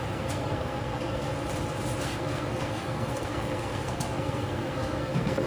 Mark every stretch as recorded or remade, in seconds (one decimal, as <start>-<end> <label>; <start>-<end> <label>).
0.0-1.3 remade; 1.3-2.0 recorded; 2.0-5.5 remade